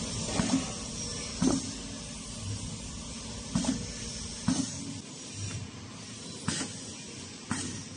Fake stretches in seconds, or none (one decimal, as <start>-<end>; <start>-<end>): 6.7-7.4